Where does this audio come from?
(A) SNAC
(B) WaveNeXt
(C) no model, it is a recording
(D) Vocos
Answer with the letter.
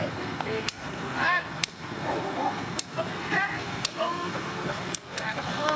A